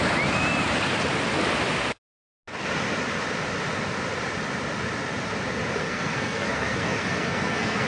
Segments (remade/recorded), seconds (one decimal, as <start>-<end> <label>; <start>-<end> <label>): 0.0-5.8 recorded; 5.8-7.9 remade